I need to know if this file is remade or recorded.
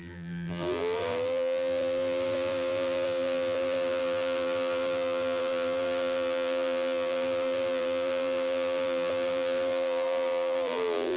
remade